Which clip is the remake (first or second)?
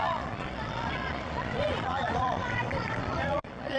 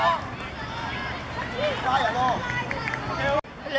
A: first